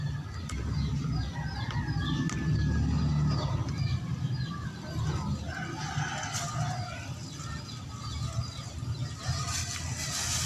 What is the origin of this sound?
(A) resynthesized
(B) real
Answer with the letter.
B